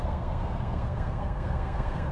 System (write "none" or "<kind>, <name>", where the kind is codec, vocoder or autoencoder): codec, SNAC